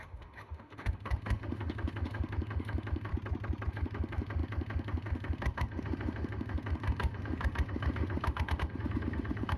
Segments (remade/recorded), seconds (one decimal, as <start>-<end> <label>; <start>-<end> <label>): 0.0-3.1 remade; 3.1-3.7 recorded; 3.7-9.6 remade